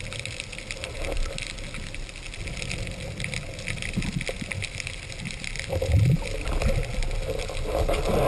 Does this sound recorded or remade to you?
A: recorded